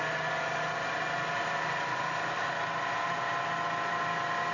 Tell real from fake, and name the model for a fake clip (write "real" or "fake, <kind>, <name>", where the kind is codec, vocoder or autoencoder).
real